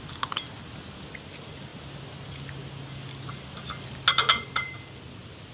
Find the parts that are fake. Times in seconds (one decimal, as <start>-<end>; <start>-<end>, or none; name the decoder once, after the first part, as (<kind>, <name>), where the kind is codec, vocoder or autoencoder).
none